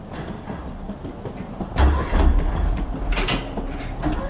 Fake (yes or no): no